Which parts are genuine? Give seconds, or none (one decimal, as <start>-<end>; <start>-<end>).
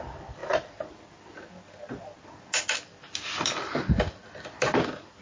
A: 0.0-5.2